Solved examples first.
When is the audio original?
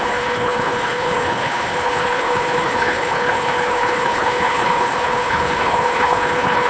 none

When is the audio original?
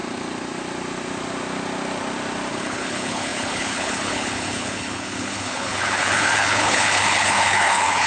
0.0-2.5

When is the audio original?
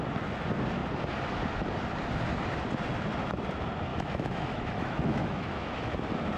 0.0-3.9; 5.9-6.4